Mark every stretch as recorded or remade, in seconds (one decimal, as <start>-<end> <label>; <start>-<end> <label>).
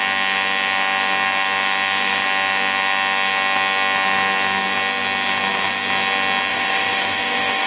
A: 0.0-6.5 recorded; 6.5-7.7 remade